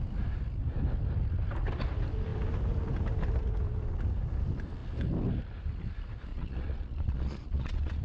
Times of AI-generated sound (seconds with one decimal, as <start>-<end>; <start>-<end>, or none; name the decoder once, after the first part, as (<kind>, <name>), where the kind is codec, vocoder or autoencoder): 6.3-8.0 (vocoder, Vocos)